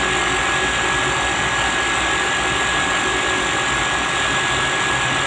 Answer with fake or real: real